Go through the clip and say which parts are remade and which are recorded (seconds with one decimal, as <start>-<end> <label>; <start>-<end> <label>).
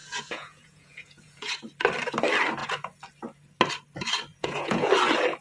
0.0-1.5 remade; 1.5-4.3 recorded; 4.3-4.9 remade; 4.9-5.4 recorded